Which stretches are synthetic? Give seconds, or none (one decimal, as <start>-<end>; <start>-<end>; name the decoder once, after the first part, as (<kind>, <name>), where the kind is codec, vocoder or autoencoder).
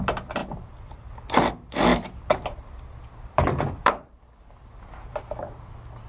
0.4-1.1 (vocoder, BigVGAN v2); 1.9-5.6